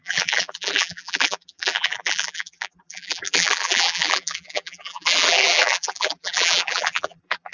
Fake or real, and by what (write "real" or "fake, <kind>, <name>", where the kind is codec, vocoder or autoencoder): fake, vocoder, BigVGAN v2